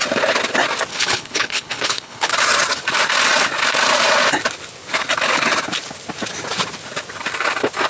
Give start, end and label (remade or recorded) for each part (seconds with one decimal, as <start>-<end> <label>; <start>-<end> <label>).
0.0-0.9 recorded; 0.9-2.3 remade; 2.3-7.9 recorded